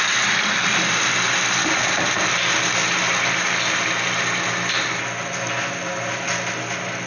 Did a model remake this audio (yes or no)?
yes